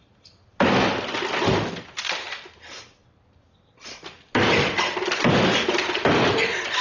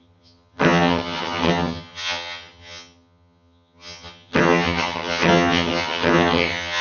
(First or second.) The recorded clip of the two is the first